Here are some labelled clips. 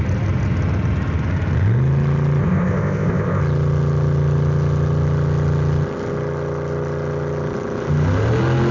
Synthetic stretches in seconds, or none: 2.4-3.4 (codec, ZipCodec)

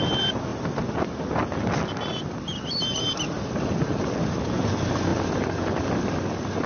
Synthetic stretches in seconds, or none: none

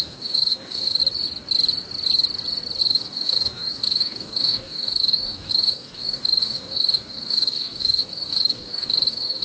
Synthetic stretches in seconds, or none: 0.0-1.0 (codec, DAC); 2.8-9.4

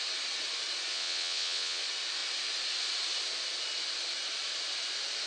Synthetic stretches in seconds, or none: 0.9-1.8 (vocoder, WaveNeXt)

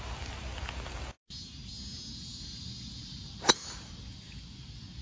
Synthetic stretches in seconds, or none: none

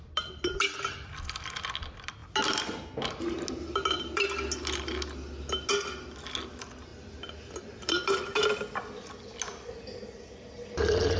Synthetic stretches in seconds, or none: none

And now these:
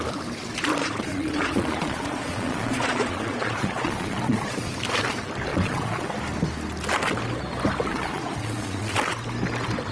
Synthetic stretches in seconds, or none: 0.8-4.7 (vocoder, Vocos); 5.5-6.1; 7.9-8.9